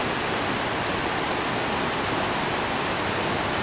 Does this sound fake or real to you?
real